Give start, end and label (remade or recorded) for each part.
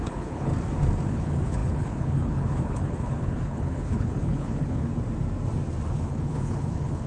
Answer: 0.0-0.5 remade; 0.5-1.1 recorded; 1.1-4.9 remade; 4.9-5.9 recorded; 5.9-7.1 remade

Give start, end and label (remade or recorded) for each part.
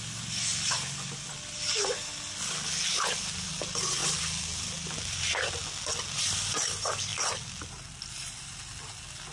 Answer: 0.0-9.3 recorded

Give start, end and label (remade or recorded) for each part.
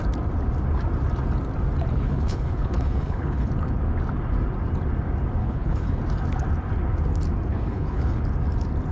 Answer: 0.0-1.9 recorded; 1.9-3.5 remade; 3.5-5.4 recorded; 5.4-6.0 remade; 6.0-7.5 recorded; 7.5-8.2 remade; 8.2-8.9 recorded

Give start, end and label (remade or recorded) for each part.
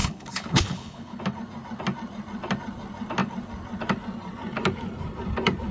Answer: 0.0-1.2 remade; 1.2-5.7 recorded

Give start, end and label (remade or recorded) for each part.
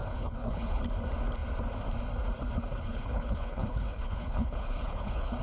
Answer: 0.0-0.8 remade; 0.8-2.7 recorded; 2.7-5.4 remade